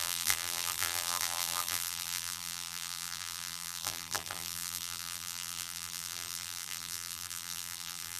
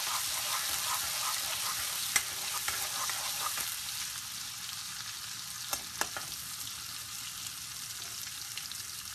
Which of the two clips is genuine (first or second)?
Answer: second